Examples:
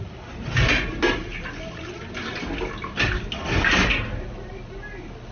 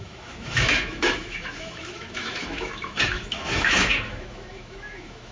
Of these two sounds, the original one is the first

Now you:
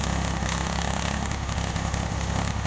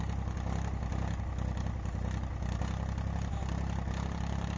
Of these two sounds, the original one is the second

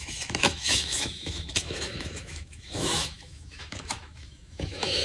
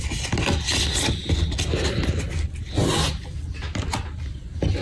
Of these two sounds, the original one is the second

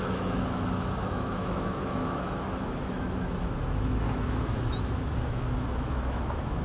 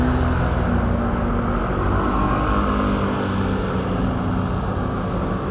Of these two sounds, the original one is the second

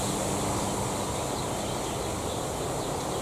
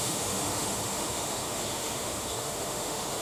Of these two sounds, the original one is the first